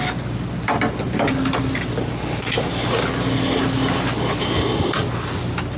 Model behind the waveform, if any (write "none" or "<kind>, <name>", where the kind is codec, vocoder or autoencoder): none